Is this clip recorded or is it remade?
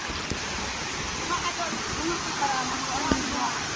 recorded